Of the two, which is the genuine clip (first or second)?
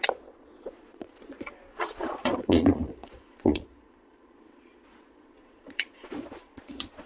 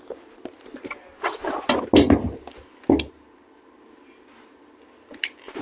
second